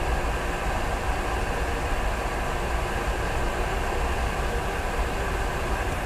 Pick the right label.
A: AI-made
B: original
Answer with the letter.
B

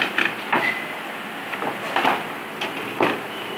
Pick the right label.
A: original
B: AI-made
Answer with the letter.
A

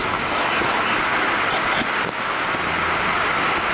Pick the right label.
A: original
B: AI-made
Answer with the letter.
A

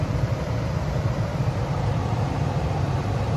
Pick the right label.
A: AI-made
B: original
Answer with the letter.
A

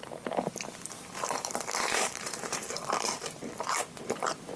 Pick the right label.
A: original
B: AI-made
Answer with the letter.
B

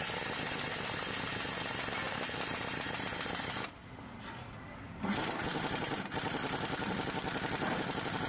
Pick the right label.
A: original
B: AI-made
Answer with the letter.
B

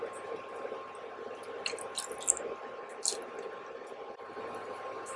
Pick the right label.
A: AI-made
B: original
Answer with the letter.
B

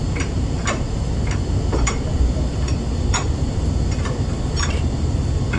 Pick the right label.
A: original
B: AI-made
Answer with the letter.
B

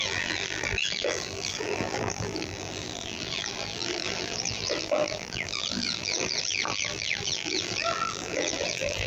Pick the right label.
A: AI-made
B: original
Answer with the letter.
A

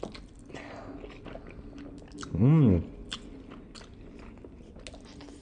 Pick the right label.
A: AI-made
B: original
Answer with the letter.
B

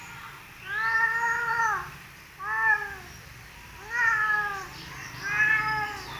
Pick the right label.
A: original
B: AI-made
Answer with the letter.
A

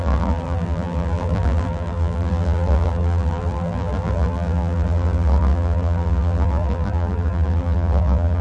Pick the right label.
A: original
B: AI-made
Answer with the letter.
B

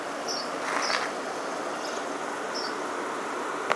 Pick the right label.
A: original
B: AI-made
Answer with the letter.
A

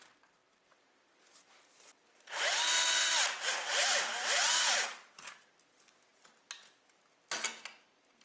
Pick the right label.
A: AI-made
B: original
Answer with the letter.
B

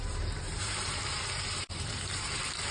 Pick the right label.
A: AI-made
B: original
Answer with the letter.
A